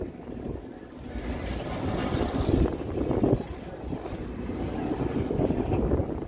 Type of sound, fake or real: real